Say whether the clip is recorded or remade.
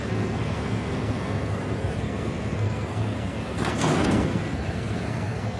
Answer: remade